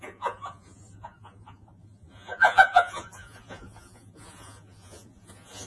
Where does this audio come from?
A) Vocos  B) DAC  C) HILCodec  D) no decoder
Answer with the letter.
A